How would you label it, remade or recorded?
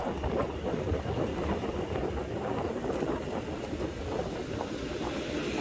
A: recorded